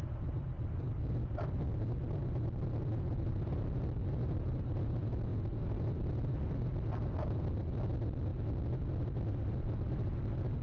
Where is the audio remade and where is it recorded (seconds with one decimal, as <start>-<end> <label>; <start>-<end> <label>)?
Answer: 0.0-2.2 remade; 2.2-3.3 recorded; 3.3-8.3 remade; 8.3-9.0 recorded; 9.0-10.6 remade